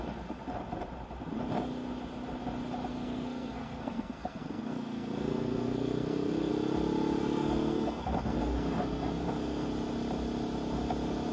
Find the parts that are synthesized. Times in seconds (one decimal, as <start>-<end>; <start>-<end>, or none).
2.9-6.5; 7.2-9.7